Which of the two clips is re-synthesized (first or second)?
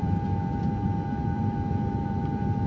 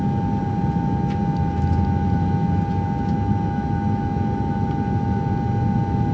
first